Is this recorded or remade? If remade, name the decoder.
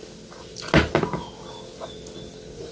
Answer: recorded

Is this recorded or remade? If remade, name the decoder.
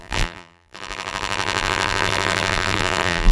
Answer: remade, vocoder, BigVGAN v2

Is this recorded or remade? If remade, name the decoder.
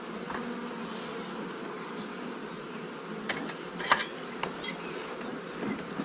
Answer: recorded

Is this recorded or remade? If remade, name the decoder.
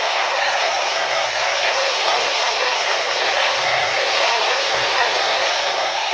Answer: remade, codec, SNAC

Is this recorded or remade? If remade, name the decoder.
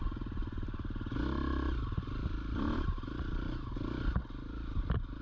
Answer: recorded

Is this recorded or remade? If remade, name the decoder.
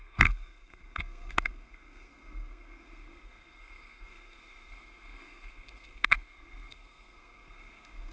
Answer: remade, codec, SNAC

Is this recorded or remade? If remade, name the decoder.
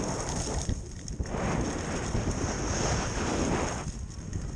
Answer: recorded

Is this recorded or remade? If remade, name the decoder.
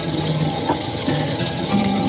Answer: remade, vocoder, HiFi-GAN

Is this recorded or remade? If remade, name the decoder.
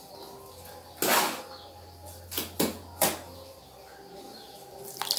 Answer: recorded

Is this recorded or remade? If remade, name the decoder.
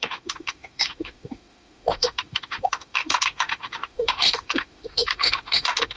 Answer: remade, autoencoder, DAC-VAE